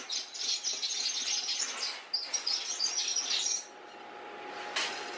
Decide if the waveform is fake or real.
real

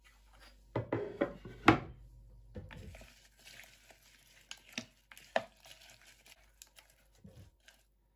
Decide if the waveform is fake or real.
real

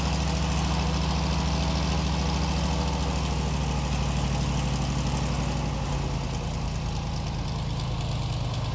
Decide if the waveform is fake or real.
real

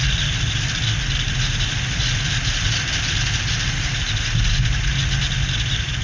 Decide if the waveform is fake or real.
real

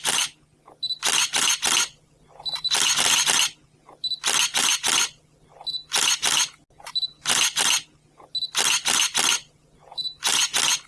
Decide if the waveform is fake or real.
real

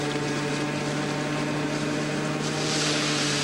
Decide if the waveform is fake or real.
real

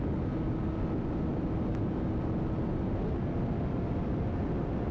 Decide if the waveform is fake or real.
real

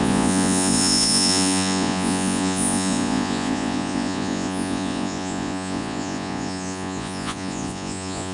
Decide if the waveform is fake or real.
fake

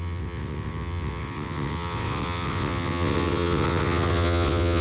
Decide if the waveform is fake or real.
fake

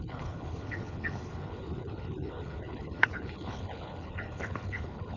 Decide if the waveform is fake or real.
fake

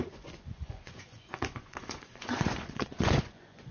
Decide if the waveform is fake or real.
fake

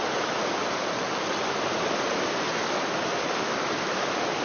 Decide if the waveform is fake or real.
real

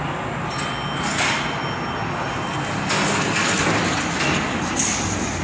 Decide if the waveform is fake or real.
real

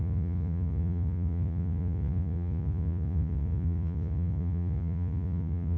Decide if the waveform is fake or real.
fake